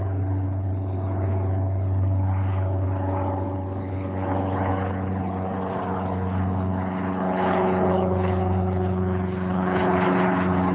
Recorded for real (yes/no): no